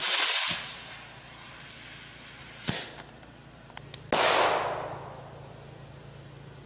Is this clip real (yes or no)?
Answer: yes